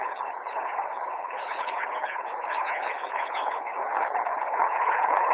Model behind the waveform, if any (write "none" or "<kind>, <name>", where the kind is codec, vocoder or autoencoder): codec, HILCodec